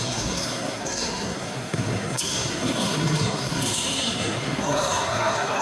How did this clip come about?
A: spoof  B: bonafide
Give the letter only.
A